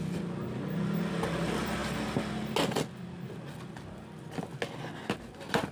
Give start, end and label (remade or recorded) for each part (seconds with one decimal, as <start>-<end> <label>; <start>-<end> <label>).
0.0-5.7 recorded